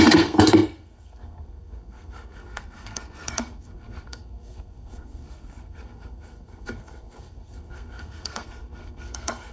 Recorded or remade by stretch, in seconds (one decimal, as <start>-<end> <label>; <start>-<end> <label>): 0.0-9.5 remade